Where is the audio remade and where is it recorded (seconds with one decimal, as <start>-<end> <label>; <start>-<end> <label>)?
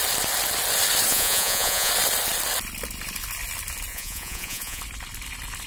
0.0-1.1 recorded; 1.1-1.9 remade; 1.9-3.9 recorded; 3.9-4.8 remade; 4.8-5.7 recorded